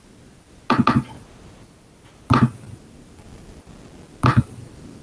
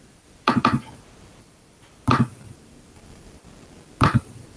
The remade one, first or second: second